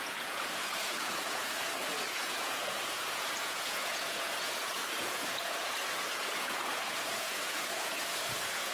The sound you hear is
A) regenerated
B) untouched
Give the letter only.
A